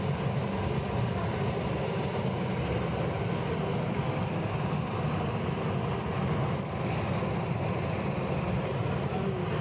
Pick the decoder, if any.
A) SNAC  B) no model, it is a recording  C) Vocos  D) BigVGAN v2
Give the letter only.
B